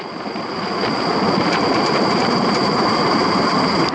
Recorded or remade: recorded